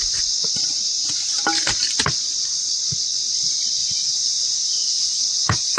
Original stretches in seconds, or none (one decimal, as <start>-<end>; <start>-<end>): 0.0-3.8

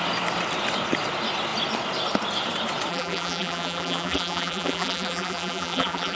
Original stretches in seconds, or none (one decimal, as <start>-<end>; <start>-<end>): 0.0-2.9